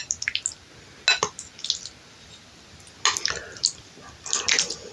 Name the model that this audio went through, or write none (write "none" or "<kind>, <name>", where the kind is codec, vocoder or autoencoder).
none